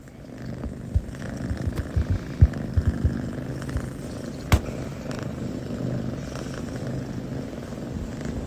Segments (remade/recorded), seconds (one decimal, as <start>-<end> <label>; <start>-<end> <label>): 0.0-4.9 recorded; 4.9-5.8 remade; 5.8-8.5 recorded